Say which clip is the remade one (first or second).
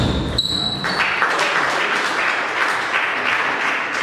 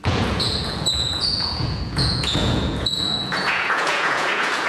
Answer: second